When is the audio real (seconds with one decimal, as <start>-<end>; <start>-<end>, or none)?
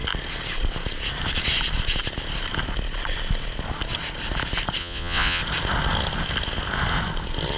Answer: 0.0-4.8; 5.4-7.6